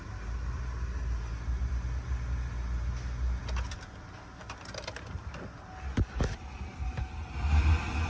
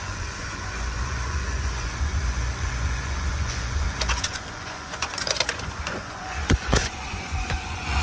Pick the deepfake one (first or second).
second